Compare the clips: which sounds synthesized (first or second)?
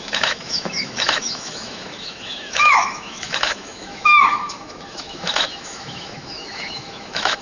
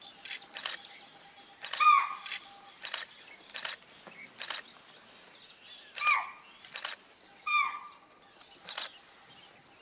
first